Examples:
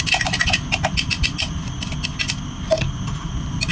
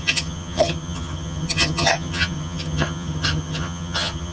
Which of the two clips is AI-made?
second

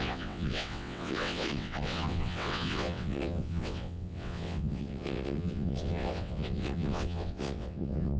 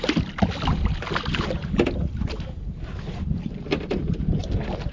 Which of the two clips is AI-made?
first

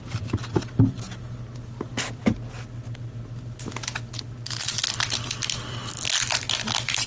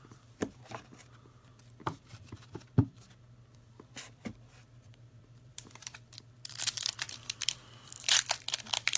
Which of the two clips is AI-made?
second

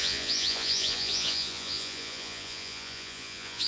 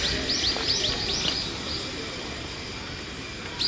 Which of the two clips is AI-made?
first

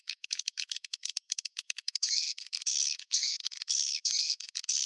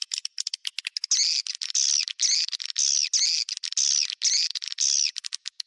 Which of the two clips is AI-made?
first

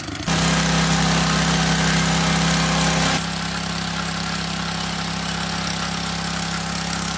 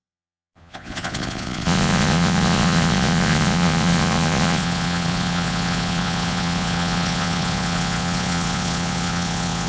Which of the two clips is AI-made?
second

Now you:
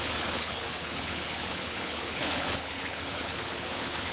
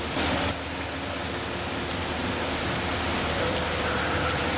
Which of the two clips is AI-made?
first